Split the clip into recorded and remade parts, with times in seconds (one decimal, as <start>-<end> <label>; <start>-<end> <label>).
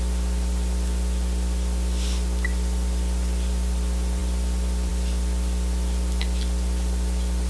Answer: 0.0-7.5 recorded